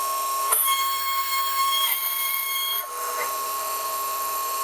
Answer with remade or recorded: remade